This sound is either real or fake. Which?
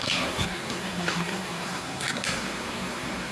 fake